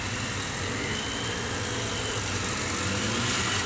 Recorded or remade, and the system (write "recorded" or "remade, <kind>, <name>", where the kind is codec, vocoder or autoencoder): recorded